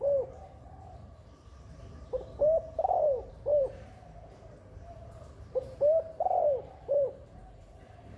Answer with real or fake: fake